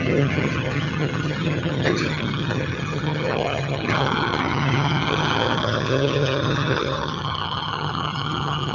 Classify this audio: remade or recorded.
remade